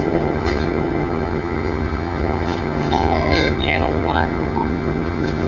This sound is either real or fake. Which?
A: fake